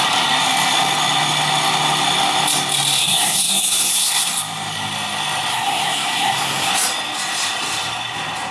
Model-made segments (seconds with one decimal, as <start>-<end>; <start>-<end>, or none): 3.0-4.3; 5.5-6.7

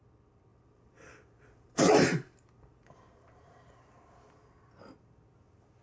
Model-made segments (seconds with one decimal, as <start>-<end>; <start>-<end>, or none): 0.5-3.8

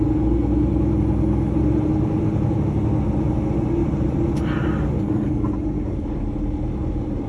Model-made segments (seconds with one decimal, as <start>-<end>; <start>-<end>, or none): 3.8-5.3

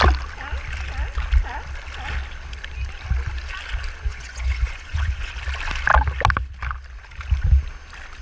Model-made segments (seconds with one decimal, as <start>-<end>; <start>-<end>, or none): 4.1-5.3

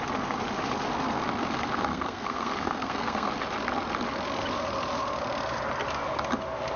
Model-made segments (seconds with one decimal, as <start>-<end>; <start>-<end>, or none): 1.9-3.3

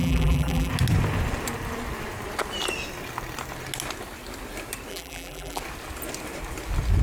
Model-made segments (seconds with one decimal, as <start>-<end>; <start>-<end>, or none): 0.0-0.7; 4.9-5.6